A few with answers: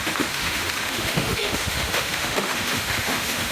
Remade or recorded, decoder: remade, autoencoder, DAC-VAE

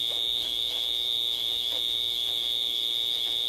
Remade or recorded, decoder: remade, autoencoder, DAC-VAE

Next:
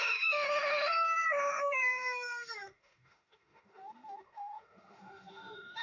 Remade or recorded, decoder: remade, autoencoder, DAC-VAE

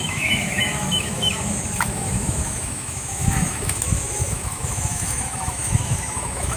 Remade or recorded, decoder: remade, autoencoder, DAC-VAE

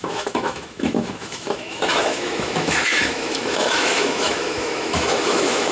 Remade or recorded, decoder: remade, autoencoder, DAC-VAE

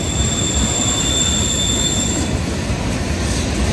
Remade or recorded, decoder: recorded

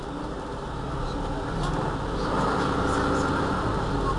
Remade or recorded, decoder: recorded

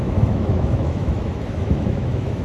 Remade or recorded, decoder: remade, autoencoder, DAC-VAE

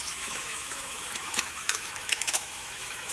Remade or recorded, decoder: remade, autoencoder, DAC-VAE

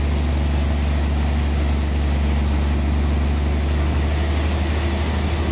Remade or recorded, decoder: recorded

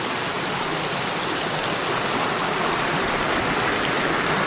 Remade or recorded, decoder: recorded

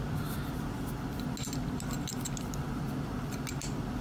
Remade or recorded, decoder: recorded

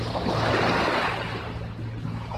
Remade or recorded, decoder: recorded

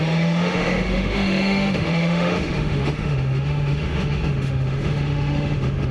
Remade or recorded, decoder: remade, autoencoder, DAC-VAE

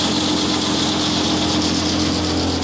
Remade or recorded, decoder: recorded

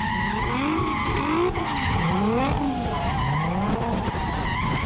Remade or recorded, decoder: recorded